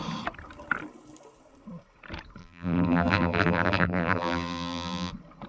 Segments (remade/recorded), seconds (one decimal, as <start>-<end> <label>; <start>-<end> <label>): 0.0-2.4 recorded; 2.4-5.1 remade; 5.1-5.5 recorded